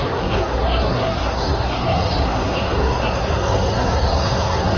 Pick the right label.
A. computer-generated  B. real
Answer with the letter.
A